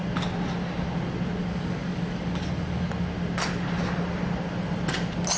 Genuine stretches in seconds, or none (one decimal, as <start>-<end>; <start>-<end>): 0.0-1.4; 2.9-5.4